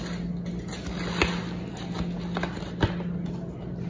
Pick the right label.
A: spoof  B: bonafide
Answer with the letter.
B